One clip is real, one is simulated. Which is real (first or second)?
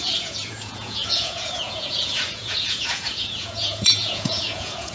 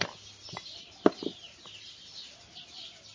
second